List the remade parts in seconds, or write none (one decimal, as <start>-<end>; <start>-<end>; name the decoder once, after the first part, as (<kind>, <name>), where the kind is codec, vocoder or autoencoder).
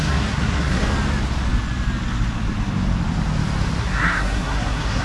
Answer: 0.0-0.8 (codec, SNAC); 3.8-5.0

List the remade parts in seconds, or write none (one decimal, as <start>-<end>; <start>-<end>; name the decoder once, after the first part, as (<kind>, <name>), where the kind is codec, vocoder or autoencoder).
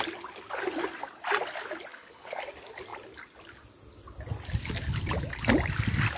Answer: 1.9-2.4 (codec, HILCodec)